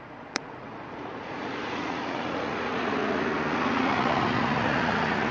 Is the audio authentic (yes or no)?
no